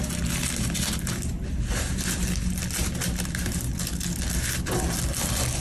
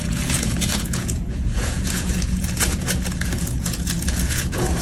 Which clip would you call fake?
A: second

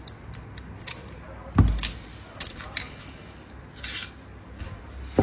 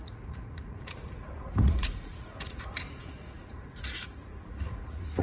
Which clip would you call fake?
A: second